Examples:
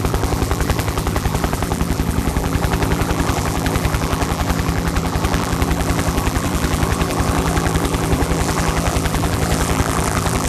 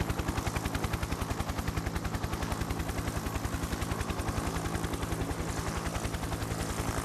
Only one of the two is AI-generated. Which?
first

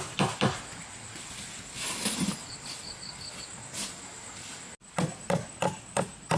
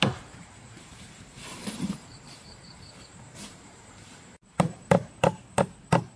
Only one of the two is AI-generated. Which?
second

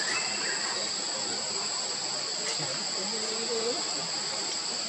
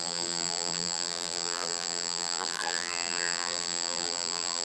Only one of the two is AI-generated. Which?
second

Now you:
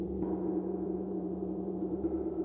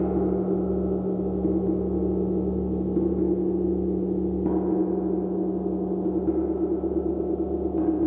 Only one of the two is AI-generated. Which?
first